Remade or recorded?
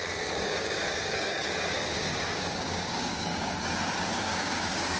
remade